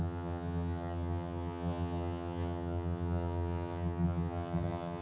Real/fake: fake